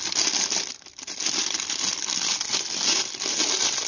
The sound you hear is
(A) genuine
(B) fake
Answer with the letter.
A